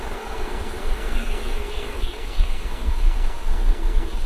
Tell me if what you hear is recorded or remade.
remade